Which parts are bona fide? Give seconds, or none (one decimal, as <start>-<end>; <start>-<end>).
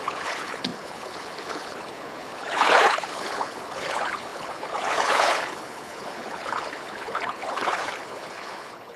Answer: none